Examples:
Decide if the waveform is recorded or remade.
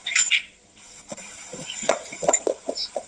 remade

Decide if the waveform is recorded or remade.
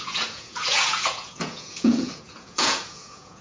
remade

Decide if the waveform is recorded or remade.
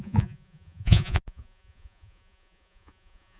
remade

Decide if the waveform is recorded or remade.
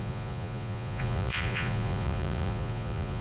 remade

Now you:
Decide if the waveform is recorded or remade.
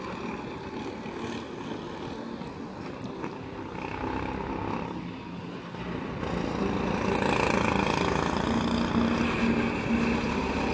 recorded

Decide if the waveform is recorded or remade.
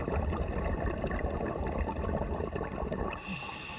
recorded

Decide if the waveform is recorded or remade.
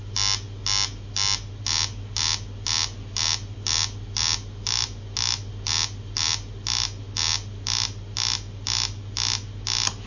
recorded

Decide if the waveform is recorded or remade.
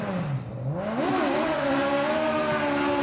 recorded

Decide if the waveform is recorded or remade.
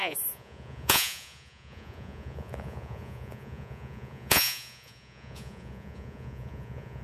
remade